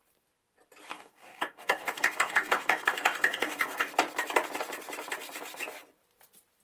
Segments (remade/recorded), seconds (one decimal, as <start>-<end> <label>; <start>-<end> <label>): 0.0-0.9 recorded; 0.9-3.9 remade; 3.9-6.6 recorded